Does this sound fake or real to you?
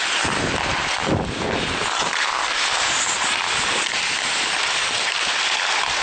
real